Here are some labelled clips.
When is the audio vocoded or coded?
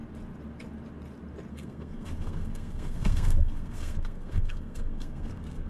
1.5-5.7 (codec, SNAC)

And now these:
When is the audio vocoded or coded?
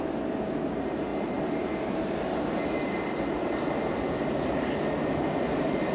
none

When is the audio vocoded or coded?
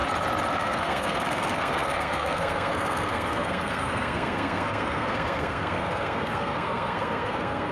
0.5-7.7 (codec, SNAC)